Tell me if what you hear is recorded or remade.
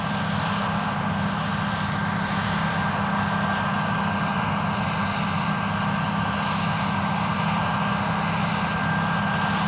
recorded